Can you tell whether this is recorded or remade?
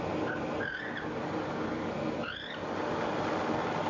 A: recorded